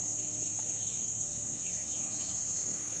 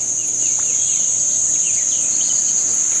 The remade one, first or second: first